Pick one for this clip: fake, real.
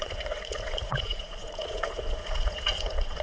fake